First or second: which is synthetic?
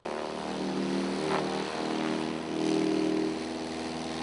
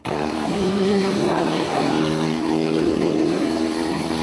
second